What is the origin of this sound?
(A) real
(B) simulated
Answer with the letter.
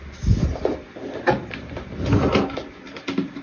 B